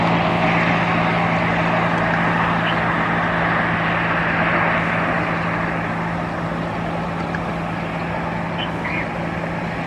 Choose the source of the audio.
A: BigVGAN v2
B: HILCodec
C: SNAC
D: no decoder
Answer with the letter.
D